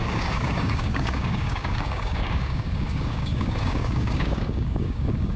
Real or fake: fake